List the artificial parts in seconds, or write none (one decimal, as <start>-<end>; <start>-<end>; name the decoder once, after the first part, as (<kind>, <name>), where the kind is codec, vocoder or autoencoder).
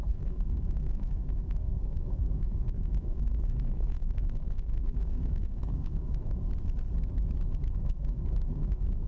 0.0-6.4 (codec, SNAC); 7.7-9.1